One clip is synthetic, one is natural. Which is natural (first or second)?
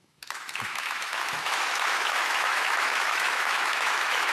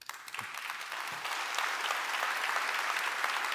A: second